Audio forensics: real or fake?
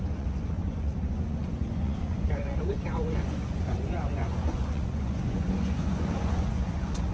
fake